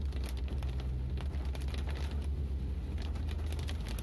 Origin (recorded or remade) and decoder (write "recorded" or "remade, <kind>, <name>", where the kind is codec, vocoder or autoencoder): recorded